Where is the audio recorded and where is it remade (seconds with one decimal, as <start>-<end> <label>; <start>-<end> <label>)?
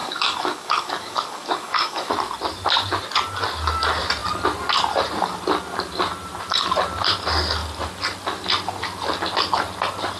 0.0-2.1 remade; 2.1-10.2 recorded